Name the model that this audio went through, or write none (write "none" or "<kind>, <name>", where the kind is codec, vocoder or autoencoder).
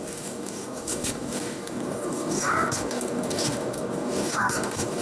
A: codec, DAC